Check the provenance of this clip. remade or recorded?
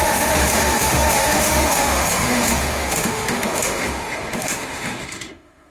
remade